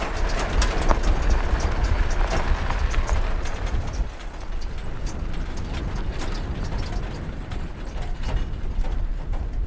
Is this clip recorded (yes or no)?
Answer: yes